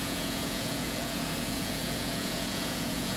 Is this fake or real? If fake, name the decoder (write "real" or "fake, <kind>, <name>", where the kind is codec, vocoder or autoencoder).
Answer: fake, vocoder, Vocos